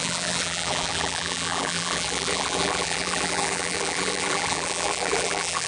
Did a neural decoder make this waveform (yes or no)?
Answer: yes